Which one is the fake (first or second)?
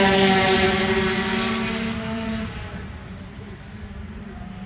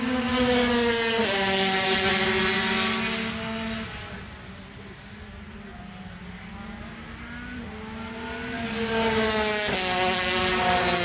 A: first